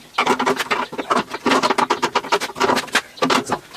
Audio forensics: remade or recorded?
recorded